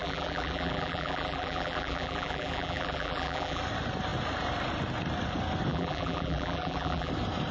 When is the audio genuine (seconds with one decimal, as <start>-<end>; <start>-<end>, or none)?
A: 3.6-5.7; 7.1-7.5